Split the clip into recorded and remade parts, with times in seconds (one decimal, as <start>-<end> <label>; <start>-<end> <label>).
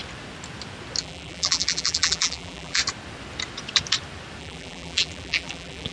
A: 0.0-1.0 recorded; 1.0-2.8 remade; 2.8-4.4 recorded; 4.4-5.9 remade